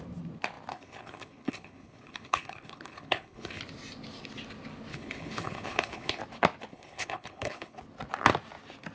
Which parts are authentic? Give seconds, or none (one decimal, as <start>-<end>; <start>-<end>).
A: 0.0-0.7; 3.6-4.9; 6.2-6.7; 7.8-8.9